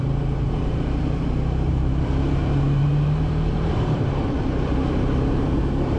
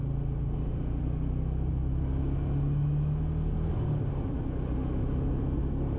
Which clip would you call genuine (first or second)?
second